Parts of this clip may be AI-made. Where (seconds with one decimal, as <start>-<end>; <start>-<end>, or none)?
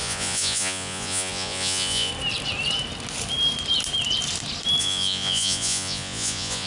0.0-2.1; 4.8-6.7